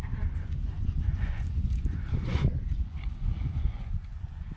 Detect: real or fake fake